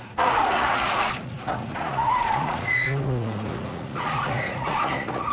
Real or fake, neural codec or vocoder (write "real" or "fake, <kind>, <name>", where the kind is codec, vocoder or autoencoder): fake, vocoder, Vocos